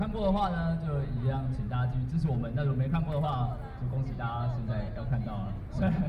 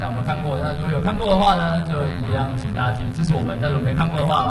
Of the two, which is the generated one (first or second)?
second